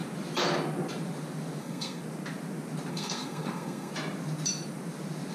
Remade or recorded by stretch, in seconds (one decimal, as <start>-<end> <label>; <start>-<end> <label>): 0.0-1.6 recorded; 1.6-2.0 remade; 2.0-2.9 recorded; 2.9-3.9 remade; 3.9-5.3 recorded

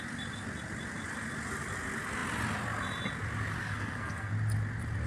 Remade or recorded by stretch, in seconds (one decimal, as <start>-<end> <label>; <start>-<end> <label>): 0.0-3.6 recorded; 3.6-4.3 remade; 4.3-5.1 recorded

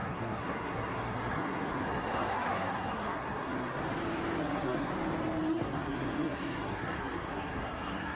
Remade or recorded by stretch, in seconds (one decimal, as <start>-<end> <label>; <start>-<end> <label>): 0.0-3.8 remade; 3.8-4.4 recorded; 4.4-4.9 remade; 4.9-5.5 recorded; 5.5-8.2 remade

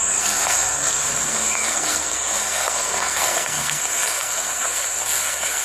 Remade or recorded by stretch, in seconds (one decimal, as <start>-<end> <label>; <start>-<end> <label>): 0.0-5.6 remade